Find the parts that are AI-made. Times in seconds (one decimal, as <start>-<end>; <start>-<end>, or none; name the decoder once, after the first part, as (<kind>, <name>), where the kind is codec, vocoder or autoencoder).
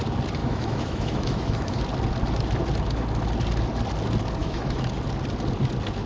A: 0.4-1.8 (autoencoder, DAC-VAE); 4.4-4.9